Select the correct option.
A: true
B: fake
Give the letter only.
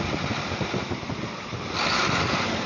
A